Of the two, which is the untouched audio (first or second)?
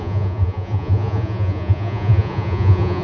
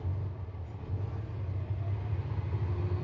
second